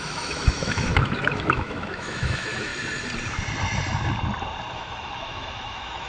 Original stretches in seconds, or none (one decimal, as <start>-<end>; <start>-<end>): 2.7-4.7